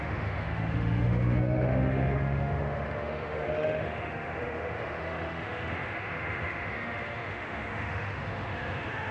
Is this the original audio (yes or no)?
no